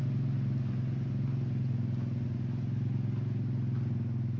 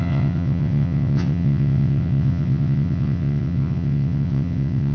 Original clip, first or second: first